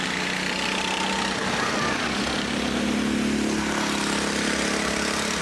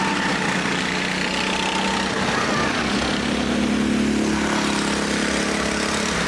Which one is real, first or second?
second